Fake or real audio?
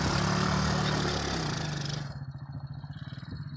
real